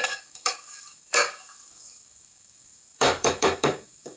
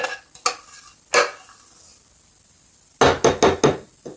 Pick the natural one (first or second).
second